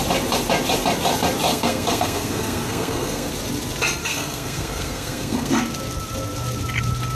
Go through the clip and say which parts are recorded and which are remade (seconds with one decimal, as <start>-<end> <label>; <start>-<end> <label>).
0.0-1.5 recorded; 1.5-3.3 remade; 3.3-4.0 recorded; 4.0-5.6 remade; 5.6-7.1 recorded